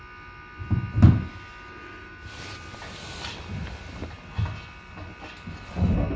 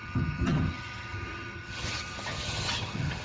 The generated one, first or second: second